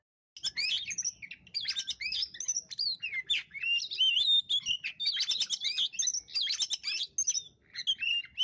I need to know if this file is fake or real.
real